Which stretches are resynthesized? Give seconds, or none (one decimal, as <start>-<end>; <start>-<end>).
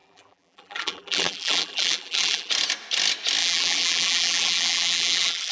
0.0-2.5; 3.4-5.5